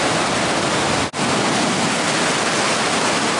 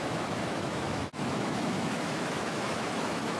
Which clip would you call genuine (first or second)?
first